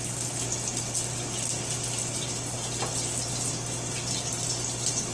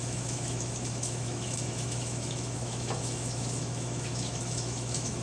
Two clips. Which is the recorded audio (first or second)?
first